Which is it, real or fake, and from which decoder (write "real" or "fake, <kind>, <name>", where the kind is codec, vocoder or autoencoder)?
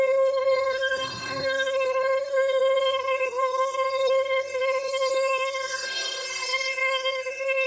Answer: fake, codec, SNAC